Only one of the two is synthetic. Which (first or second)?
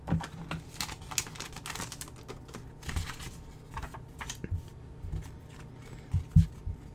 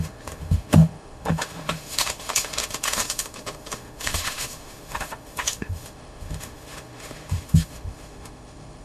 second